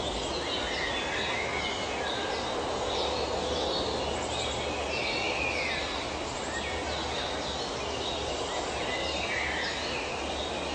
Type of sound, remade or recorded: recorded